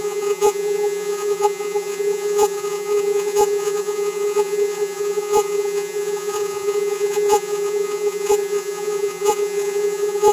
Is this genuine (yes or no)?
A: no